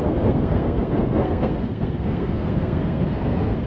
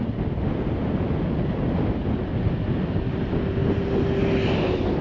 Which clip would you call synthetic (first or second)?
first